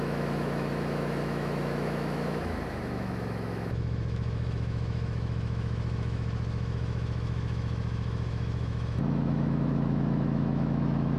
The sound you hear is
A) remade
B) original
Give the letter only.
A